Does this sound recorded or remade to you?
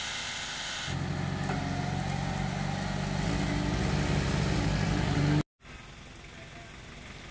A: recorded